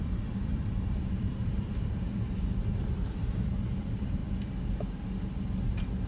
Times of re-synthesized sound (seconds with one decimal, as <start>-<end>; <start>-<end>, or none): 0.0-4.2